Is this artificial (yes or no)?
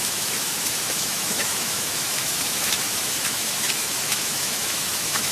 yes